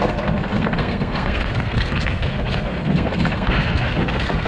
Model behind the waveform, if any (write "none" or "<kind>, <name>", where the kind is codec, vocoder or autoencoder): codec, SNAC